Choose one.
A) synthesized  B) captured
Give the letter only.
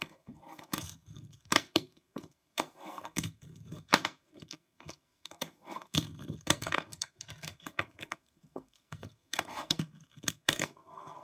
A